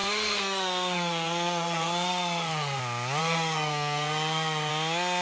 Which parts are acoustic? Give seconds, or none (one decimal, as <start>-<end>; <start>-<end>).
2.8-3.2; 4.7-5.2